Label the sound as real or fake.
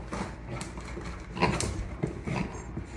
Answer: real